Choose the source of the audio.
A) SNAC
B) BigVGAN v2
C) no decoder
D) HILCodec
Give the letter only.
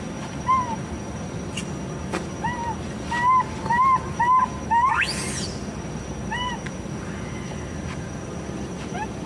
C